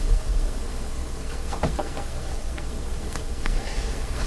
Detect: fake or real fake